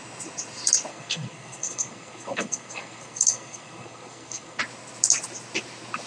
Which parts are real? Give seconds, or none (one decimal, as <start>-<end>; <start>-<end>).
0.0-0.9; 4.6-6.1